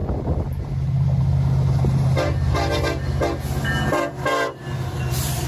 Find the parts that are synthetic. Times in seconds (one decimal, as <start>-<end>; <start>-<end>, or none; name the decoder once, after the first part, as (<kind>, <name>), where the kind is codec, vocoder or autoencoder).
none